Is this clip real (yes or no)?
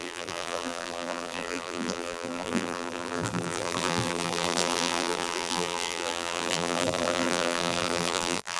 no